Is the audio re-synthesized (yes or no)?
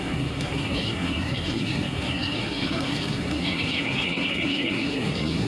yes